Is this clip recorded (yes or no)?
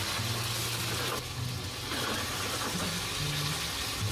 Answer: yes